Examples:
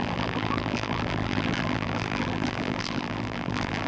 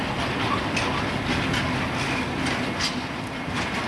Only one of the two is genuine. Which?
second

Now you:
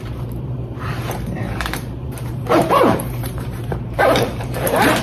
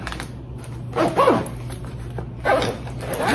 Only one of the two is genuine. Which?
second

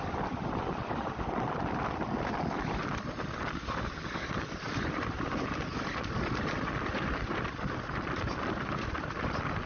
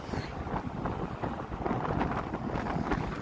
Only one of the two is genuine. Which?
second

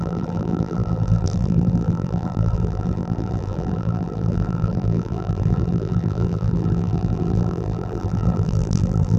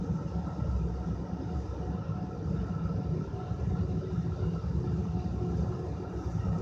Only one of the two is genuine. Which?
second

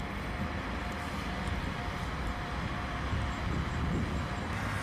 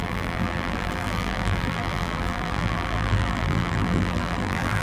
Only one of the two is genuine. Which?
first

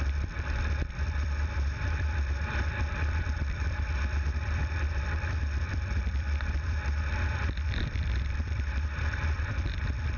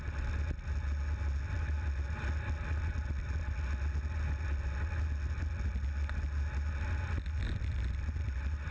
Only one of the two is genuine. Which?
second